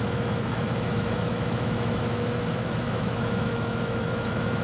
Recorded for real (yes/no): no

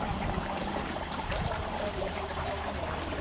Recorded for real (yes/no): no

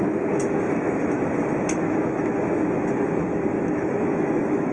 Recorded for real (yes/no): no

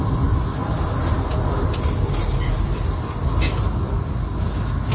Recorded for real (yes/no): yes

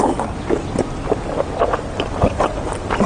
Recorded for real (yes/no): yes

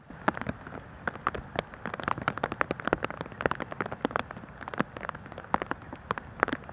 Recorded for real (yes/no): yes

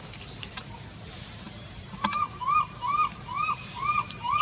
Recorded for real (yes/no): no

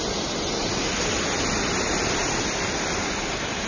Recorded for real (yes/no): yes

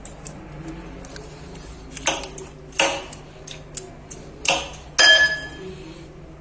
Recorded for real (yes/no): yes